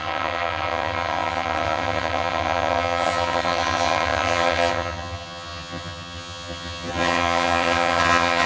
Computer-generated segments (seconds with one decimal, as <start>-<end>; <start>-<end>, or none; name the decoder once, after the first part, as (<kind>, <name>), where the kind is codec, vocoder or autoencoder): 0.0-8.5 (vocoder, HiFi-GAN)